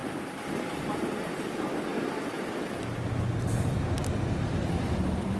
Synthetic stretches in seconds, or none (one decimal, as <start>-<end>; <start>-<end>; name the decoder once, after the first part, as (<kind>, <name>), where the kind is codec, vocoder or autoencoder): none